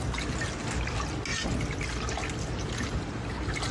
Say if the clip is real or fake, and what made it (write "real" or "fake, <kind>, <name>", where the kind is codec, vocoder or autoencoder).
real